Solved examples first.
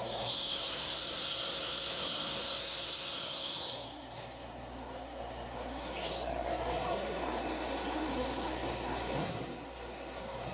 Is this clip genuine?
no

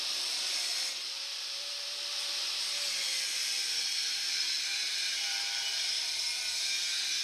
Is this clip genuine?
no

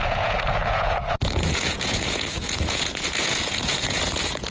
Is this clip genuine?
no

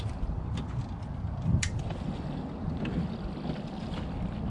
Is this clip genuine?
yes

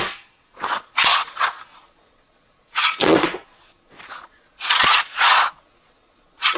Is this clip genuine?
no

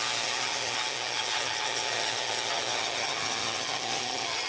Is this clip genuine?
no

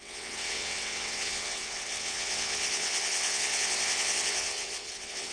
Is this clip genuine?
no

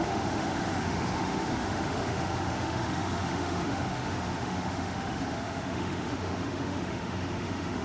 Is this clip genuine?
no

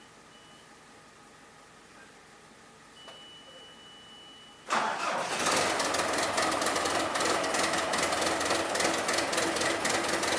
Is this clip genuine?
yes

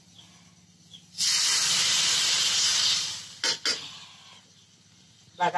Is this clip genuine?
yes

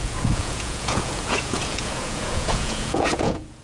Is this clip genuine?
no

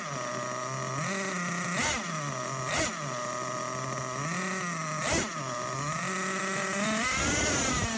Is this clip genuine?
yes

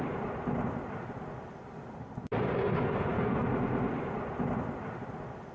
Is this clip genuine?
yes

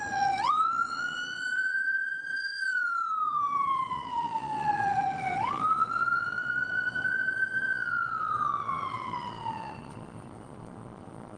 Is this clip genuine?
no